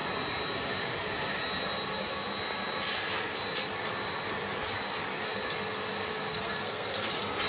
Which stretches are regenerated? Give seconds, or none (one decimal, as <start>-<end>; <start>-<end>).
6.3-7.1